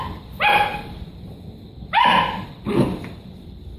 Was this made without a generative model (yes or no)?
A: yes